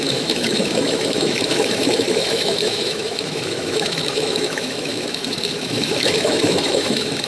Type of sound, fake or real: fake